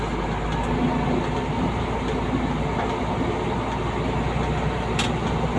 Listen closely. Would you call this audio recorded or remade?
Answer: recorded